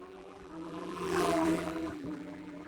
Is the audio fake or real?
fake